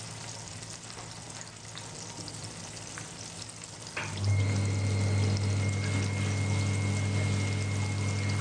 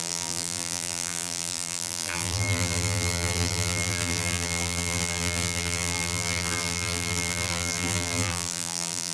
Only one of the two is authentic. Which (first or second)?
first